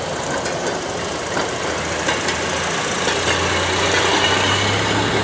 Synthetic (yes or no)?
no